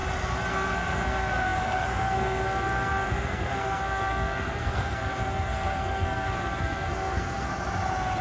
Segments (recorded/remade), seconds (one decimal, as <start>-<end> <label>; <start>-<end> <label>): 0.0-0.5 recorded; 0.5-7.5 remade; 7.5-8.2 recorded